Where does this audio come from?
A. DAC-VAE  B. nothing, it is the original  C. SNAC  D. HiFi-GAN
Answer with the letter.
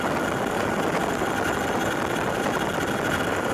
B